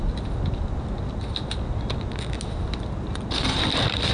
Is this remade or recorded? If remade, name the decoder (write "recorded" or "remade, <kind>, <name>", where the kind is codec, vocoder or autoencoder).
recorded